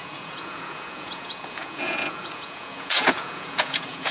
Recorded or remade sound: remade